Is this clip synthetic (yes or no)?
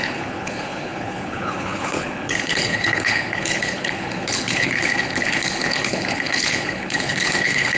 yes